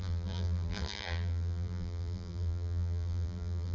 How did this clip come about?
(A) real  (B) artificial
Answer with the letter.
B